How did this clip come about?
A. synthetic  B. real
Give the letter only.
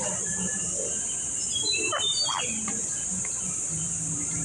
A